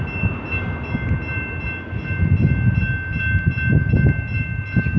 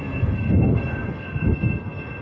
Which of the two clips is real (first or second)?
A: first